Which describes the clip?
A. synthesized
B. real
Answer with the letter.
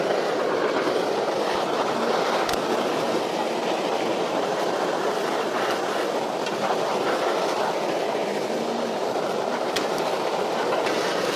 B